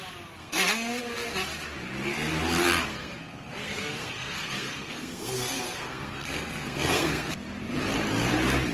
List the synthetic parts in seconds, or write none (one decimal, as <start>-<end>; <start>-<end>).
0.4-1.0; 2.9-7.3